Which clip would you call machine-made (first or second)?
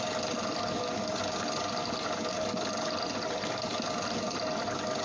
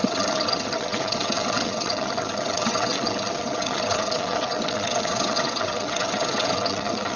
second